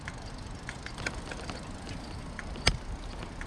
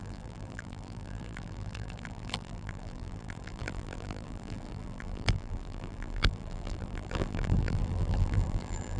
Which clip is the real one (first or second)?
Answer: first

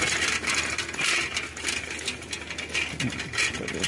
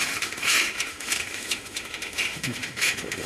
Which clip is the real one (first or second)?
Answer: first